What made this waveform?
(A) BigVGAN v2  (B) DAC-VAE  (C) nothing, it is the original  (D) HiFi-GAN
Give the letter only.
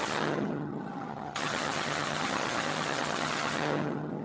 D